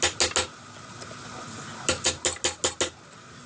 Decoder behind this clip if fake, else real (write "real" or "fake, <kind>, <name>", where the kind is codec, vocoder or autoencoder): real